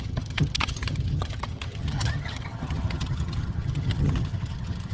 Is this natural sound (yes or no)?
no